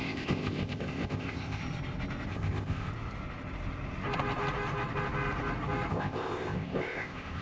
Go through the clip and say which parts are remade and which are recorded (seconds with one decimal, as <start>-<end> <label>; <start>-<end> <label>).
0.0-1.6 remade; 1.6-2.3 recorded; 2.3-2.9 remade; 2.9-5.9 recorded; 5.9-7.4 remade